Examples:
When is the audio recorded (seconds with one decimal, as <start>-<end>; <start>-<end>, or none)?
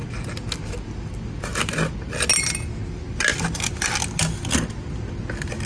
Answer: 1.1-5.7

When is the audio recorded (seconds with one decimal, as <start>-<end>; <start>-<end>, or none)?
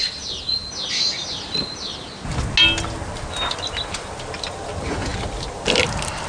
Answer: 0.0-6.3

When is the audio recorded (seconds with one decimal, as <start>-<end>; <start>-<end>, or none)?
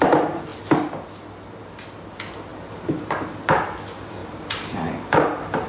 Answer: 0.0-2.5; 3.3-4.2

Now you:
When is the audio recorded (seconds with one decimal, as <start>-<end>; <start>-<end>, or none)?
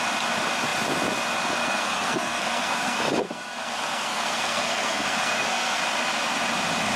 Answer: 0.0-1.6; 5.8-7.0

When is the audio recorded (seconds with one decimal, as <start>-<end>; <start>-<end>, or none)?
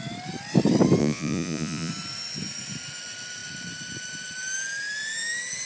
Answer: 0.0-1.0; 1.9-5.7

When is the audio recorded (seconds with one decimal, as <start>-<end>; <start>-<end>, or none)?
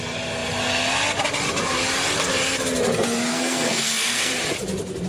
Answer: 0.0-3.3; 4.3-5.1